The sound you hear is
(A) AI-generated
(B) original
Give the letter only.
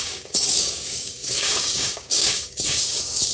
A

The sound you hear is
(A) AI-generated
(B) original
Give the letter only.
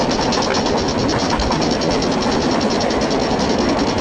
B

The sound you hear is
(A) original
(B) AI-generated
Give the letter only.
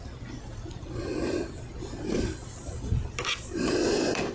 A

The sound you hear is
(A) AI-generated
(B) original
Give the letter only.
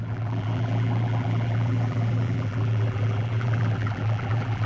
A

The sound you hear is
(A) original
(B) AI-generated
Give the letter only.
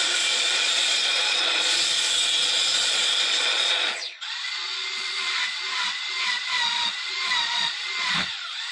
B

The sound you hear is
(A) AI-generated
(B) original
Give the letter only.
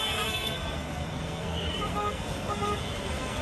A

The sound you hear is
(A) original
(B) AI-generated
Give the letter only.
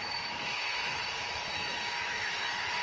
B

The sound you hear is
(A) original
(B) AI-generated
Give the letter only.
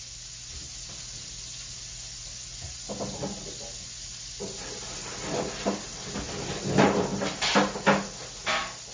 A